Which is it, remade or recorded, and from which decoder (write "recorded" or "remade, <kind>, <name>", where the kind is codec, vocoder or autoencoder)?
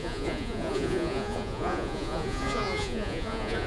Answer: remade, vocoder, Vocos